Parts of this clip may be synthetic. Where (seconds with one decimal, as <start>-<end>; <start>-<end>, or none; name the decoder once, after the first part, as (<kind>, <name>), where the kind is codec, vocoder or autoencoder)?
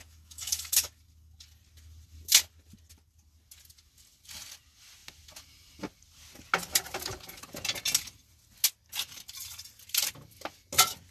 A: 0.0-0.9 (codec, DAC)